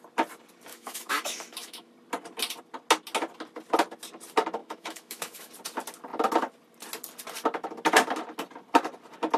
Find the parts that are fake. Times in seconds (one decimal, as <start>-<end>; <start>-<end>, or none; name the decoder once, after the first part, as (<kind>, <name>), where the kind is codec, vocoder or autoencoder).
0.7-1.9 (autoencoder, DAC-VAE); 4.6-5.5

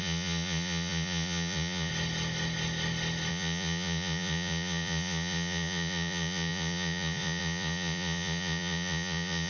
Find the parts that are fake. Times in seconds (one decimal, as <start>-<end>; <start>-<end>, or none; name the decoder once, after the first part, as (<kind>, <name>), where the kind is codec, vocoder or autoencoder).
0.0-1.9 (vocoder, Vocos); 3.3-9.5

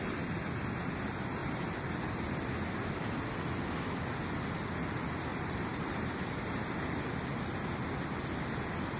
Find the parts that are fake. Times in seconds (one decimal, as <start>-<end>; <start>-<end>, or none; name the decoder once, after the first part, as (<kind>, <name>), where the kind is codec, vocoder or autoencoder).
1.4-2.3 (vocoder, BigVGAN v2); 5.3-6.8

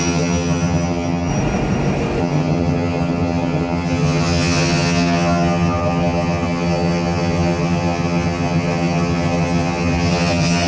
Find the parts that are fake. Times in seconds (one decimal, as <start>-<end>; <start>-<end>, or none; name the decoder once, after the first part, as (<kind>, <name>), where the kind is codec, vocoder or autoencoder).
0.0-1.3 (vocoder, HiFi-GAN); 2.2-10.7

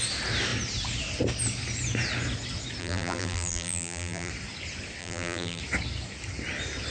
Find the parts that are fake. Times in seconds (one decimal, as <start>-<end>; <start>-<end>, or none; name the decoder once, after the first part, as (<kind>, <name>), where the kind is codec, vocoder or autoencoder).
2.8-4.3 (vocoder, BigVGAN v2); 5.0-5.6

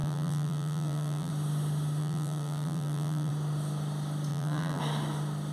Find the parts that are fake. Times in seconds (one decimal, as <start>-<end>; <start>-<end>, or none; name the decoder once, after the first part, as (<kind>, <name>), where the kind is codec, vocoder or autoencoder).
0.0-1.3 (vocoder, BigVGAN v2); 2.0-3.3; 4.3-4.8